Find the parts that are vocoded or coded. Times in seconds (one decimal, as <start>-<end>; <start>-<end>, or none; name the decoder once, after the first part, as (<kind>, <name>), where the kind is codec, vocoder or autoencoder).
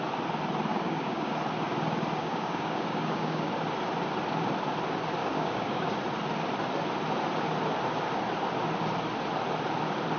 0.7-1.3 (codec, DAC); 2.2-3.5; 5.2-5.9